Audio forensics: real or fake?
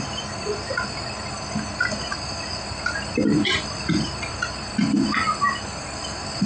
real